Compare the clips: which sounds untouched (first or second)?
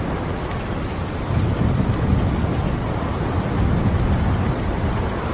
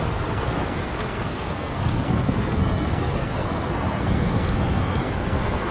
first